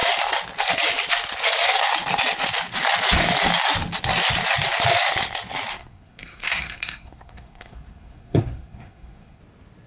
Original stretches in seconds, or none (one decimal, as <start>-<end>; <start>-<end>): 0.0-5.7; 9.4-9.9